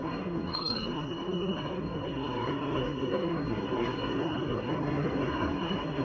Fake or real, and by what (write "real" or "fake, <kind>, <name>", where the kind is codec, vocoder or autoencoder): fake, codec, SNAC